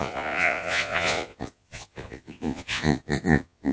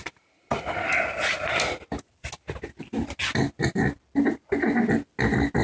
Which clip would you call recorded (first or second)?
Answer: second